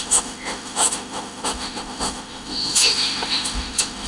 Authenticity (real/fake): fake